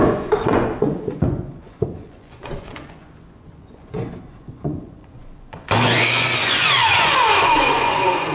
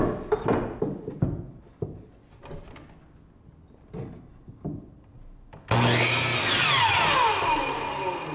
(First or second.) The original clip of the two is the second